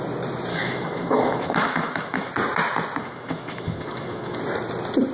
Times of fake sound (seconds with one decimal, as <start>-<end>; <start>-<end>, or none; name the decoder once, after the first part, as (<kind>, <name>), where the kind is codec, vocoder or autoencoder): 0.5-2.3 (autoencoder, DAC-VAE); 3.0-4.4